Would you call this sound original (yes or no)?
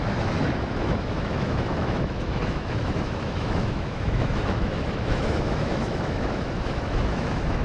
no